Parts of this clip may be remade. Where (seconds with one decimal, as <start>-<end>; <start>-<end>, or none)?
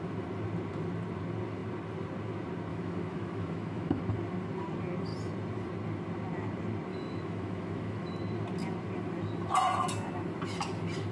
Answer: 2.7-4.0; 6.9-8.2